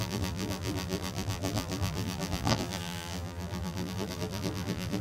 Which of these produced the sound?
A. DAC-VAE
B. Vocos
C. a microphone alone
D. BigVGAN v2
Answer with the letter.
D